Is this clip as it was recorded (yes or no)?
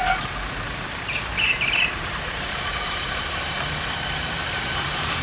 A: no